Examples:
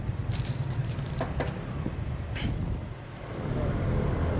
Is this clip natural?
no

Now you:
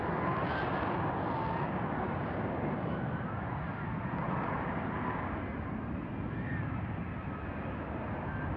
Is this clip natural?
yes